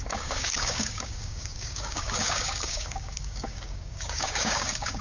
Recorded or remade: remade